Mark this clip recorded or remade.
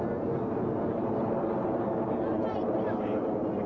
recorded